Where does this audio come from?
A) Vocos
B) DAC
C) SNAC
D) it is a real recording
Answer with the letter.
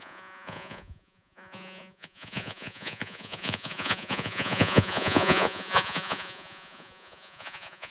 A